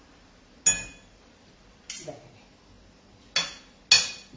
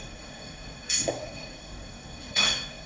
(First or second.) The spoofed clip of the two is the second